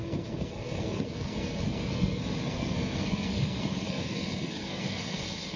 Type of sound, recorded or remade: remade